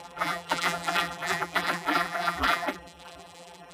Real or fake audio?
fake